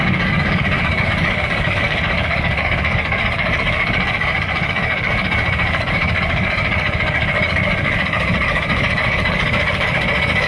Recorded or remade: remade